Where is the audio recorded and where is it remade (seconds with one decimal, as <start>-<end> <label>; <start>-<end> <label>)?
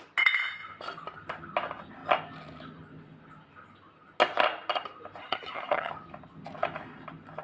0.0-5.2 recorded; 5.2-5.9 remade; 5.9-7.4 recorded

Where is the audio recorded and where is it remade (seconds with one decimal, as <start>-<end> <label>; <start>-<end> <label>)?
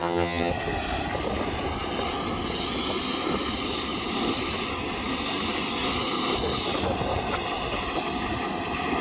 0.0-0.5 remade; 0.5-9.0 recorded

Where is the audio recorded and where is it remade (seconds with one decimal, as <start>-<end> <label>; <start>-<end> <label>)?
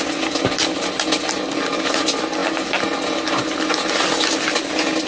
0.0-5.1 recorded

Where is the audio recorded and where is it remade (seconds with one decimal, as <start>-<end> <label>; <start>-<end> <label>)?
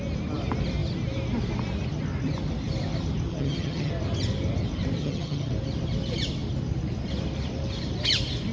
0.0-3.3 recorded; 3.3-3.9 remade; 3.9-5.0 recorded; 5.0-5.5 remade; 5.5-8.5 recorded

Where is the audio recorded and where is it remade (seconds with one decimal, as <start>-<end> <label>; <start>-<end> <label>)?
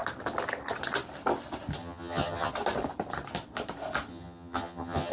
0.0-1.8 recorded; 1.8-2.5 remade; 2.5-4.1 recorded; 4.1-5.1 remade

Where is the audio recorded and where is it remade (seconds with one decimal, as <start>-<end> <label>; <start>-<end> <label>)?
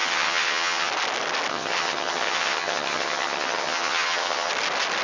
0.0-0.9 remade; 0.9-1.5 recorded; 1.5-4.5 remade; 4.5-5.0 recorded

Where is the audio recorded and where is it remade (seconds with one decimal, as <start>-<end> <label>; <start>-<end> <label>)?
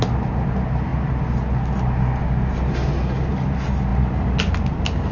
0.0-5.1 recorded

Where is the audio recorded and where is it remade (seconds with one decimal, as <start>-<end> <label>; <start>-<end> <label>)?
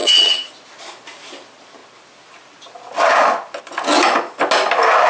0.0-0.5 remade; 0.5-5.1 recorded